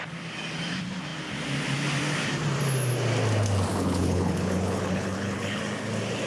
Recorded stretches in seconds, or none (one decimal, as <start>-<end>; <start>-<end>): 0.0-3.7; 5.6-6.3